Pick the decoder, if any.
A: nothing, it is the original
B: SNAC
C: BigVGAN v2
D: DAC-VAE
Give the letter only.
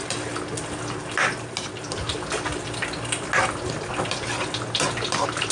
A